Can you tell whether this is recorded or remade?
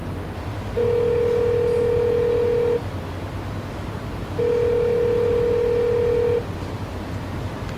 recorded